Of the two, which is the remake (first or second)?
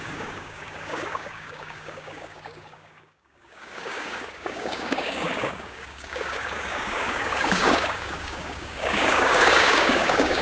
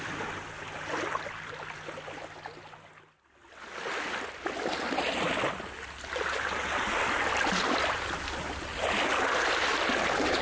first